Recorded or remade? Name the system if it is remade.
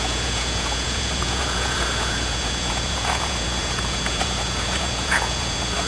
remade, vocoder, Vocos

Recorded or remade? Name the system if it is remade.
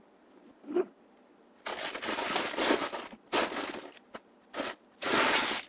recorded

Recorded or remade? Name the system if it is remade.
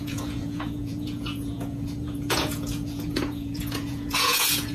remade, vocoder, Vocos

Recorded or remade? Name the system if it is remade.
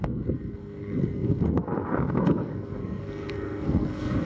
remade, codec, SNAC